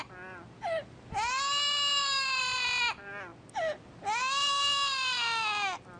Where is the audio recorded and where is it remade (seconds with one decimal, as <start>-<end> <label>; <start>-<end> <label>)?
0.0-6.0 recorded